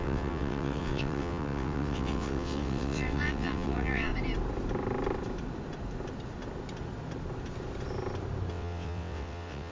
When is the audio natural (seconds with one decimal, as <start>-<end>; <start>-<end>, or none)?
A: 4.1-8.5